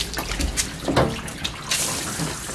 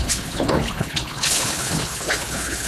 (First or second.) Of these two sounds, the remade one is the second